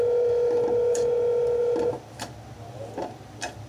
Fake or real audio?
real